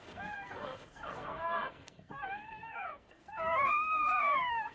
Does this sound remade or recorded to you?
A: remade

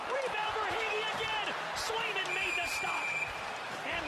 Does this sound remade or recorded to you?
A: remade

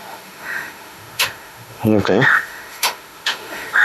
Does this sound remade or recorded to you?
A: remade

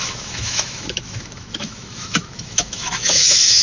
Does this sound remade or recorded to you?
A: remade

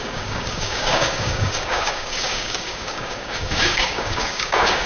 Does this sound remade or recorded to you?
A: remade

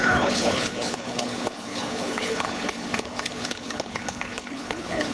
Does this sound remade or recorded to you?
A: remade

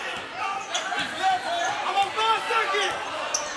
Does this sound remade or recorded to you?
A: recorded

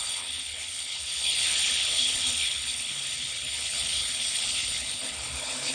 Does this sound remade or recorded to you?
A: remade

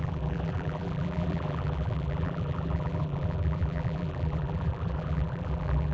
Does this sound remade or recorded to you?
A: remade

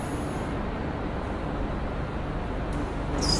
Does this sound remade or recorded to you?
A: recorded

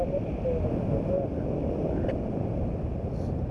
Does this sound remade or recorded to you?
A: recorded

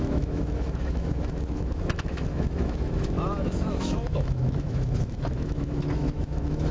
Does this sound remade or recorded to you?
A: remade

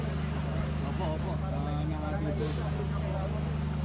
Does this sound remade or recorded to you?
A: recorded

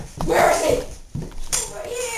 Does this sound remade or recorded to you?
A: remade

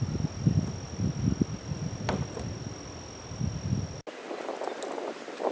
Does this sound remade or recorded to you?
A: recorded